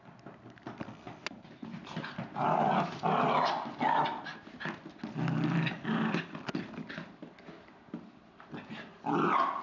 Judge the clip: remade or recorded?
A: recorded